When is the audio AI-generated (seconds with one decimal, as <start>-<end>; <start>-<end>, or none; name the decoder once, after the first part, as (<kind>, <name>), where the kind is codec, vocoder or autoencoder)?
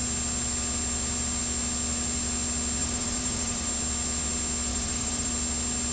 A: 2.8-3.7 (vocoder, BigVGAN v2); 4.7-5.3